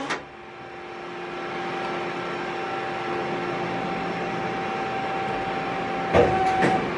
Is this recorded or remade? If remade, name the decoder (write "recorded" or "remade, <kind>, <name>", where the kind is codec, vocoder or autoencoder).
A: recorded